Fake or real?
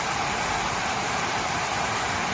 fake